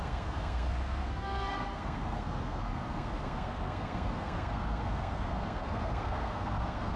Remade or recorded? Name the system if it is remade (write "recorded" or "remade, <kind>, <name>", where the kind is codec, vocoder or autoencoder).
remade, codec, SNAC